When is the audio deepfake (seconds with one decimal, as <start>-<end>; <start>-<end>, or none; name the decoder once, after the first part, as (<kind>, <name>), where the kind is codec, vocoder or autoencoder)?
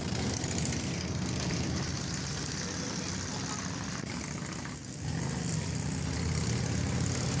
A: none